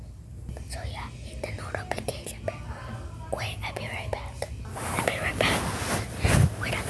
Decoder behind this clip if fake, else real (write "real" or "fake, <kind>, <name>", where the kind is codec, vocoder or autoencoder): real